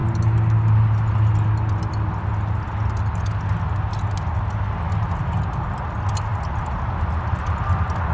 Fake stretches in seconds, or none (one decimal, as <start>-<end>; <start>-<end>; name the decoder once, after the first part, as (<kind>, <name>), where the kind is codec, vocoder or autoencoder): none